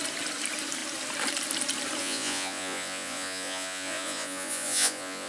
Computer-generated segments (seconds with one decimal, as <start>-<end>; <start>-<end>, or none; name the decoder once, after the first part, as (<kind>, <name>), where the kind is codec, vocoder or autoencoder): 2.0-5.3 (vocoder, Vocos)